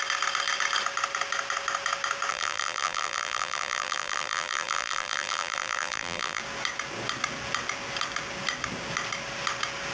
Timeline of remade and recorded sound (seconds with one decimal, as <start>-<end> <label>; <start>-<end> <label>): 0.0-2.3 recorded; 2.3-6.4 remade; 6.4-9.9 recorded